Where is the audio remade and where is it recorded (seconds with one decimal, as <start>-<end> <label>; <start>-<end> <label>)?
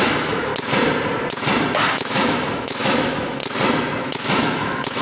0.0-0.5 remade; 0.5-1.9 recorded; 1.9-3.4 remade; 3.4-4.0 recorded; 4.0-5.0 remade